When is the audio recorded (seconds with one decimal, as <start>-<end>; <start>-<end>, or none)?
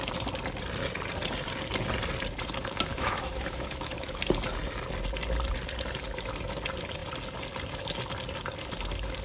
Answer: 0.0-2.9; 4.2-9.2